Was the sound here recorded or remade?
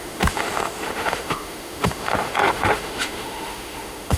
remade